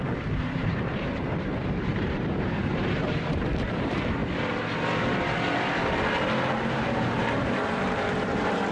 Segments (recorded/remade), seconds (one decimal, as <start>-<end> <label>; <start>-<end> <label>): 0.0-4.2 remade; 4.2-6.6 recorded; 6.6-8.7 remade